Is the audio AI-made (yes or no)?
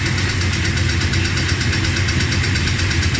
no